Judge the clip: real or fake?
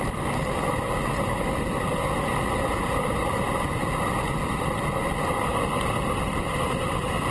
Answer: real